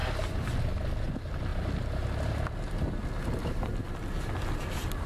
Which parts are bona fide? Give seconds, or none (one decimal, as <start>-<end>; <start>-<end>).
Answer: 0.0-5.1